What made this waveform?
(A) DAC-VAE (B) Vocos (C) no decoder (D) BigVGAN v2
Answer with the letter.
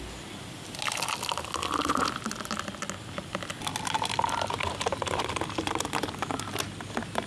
C